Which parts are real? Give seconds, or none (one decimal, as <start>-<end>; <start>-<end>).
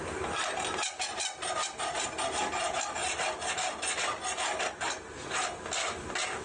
0.0-6.4